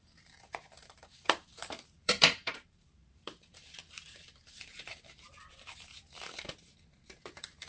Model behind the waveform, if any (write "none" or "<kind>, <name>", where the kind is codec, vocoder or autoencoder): vocoder, BigVGAN v2